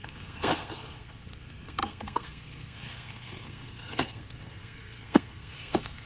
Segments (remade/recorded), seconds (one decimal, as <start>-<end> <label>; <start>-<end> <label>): 0.0-6.1 remade